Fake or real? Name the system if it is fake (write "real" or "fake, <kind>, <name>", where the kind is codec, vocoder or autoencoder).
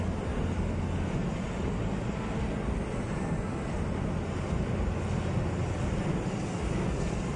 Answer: real